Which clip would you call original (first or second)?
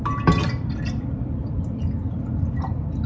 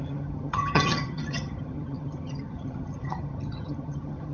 first